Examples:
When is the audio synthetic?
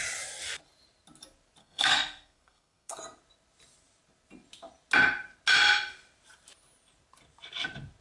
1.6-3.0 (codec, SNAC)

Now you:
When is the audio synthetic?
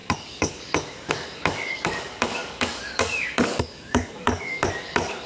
0.0-5.3 (codec, DAC)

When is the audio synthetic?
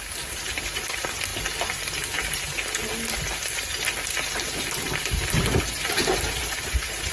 0.0-1.3 (vocoder, BigVGAN v2); 5.6-7.1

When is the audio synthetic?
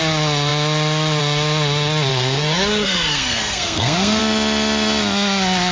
2.1-4.2 (codec, SNAC)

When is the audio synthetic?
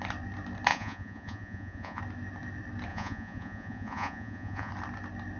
0.7-2.0 (vocoder, Vocos); 2.9-4.7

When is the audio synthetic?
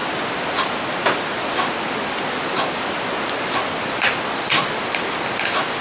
3.5-5.8 (vocoder, BigVGAN v2)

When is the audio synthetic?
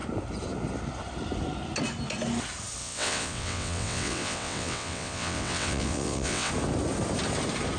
2.8-6.5 (vocoder, WaveNeXt)